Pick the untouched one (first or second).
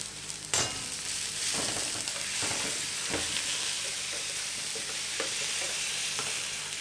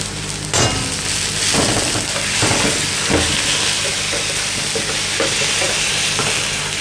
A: second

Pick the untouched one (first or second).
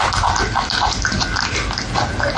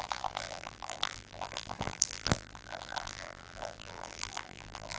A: first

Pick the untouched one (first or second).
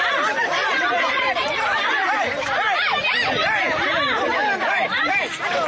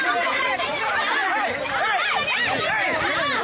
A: second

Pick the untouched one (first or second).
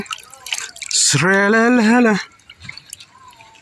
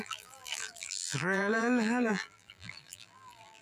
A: first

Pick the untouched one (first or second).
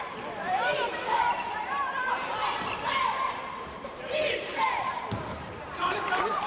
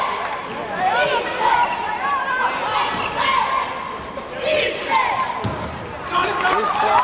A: second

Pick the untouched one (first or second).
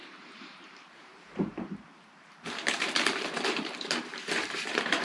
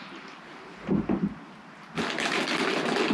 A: second